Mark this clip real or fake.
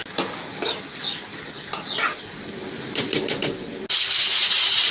real